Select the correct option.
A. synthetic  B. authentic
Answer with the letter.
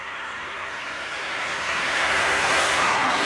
A